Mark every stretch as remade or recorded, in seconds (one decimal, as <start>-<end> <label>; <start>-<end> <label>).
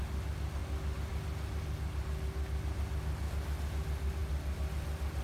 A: 0.0-5.2 recorded